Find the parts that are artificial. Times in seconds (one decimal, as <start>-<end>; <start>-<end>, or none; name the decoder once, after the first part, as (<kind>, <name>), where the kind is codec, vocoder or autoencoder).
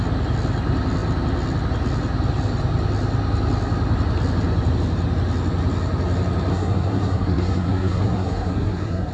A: 6.5-9.1 (codec, SNAC)